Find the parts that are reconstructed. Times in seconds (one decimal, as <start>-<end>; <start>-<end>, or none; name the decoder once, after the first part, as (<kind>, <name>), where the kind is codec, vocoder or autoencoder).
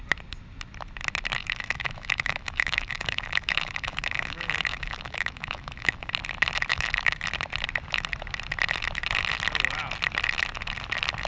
1.4-6.1 (autoencoder, DAC-VAE); 6.7-7.2